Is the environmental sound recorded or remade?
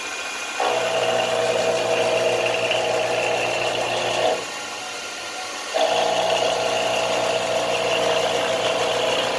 recorded